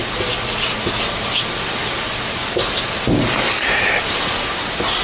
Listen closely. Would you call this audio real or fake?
real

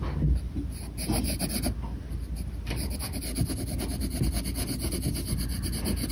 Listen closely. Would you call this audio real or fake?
real